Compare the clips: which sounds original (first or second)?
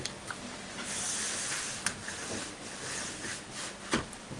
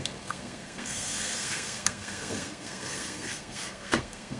first